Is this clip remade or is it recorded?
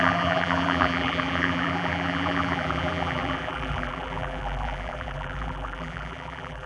remade